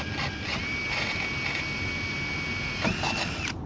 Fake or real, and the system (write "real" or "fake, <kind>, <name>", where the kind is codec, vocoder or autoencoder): real